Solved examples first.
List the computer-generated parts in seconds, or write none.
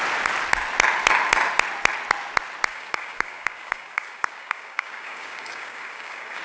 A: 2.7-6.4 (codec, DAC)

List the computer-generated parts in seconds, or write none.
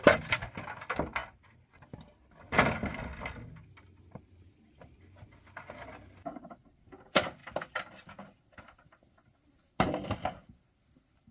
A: none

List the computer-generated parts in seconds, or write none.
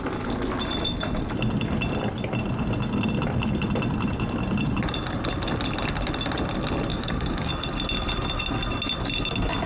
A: 6.9-7.5 (codec, DAC)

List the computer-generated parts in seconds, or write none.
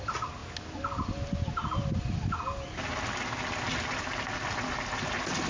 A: none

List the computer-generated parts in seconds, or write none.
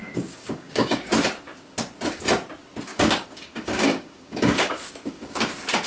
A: 0.0-1.1 (codec, DAC); 2.9-5.5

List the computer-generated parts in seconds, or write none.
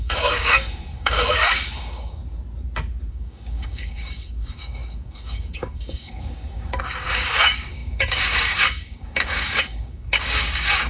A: 0.0-2.2 (codec, DAC); 3.1-10.9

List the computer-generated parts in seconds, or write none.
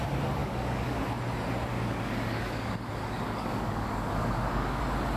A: 0.4-1.0 (codec, DAC); 1.7-4.8